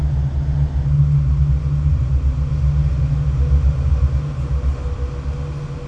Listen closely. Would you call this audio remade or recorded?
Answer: recorded